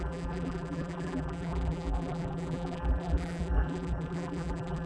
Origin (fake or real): fake